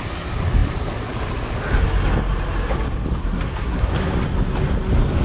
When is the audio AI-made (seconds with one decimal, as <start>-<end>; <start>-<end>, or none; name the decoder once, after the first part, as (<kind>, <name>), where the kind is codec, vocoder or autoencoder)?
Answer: 3.2-3.9 (codec, SNAC)